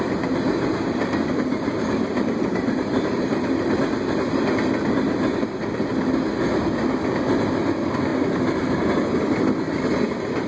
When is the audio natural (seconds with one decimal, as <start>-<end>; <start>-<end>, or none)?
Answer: 0.0-0.7; 3.8-10.5